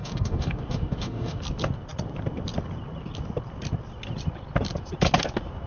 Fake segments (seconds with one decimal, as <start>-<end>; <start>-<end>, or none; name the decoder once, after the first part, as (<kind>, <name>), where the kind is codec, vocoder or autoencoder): 0.0-1.4 (autoencoder, DAC-VAE)